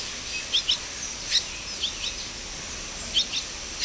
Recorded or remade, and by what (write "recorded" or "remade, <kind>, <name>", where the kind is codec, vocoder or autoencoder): recorded